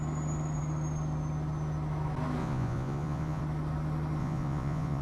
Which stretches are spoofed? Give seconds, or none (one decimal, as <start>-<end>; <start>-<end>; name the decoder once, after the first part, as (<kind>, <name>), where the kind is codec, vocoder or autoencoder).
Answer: 2.4-3.4 (vocoder, Vocos); 4.2-5.0